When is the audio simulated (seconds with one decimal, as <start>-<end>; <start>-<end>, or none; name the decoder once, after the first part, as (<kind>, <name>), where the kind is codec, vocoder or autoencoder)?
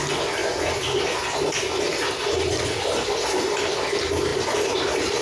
none